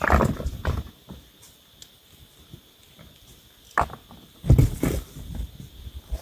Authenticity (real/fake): real